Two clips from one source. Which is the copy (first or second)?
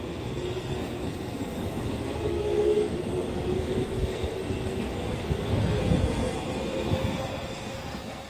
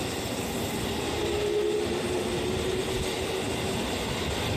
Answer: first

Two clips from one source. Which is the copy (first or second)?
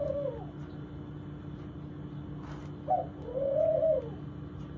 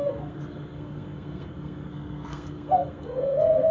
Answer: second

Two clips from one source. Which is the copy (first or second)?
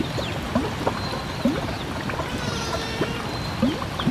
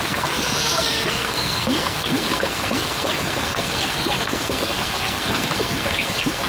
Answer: second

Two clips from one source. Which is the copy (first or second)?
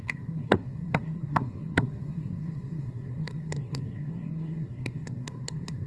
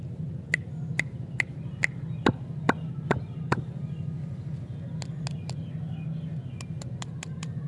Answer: first